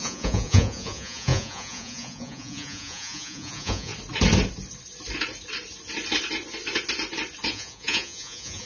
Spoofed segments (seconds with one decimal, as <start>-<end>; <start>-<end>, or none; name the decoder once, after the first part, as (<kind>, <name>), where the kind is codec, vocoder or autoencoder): 0.0-3.9 (vocoder, Vocos); 7.5-8.7